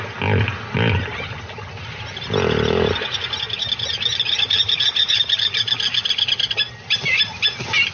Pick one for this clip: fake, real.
real